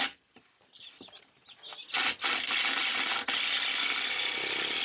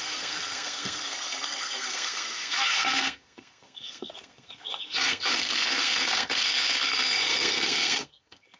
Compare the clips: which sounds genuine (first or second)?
first